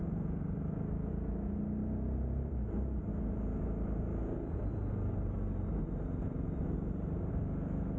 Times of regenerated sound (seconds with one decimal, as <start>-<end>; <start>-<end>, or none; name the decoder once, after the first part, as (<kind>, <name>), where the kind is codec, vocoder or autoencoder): 1.8-2.7 (vocoder, BigVGAN v2)